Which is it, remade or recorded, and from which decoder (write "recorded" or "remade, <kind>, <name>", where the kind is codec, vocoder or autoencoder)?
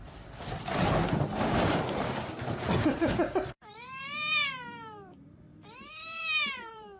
remade, vocoder, BigVGAN v2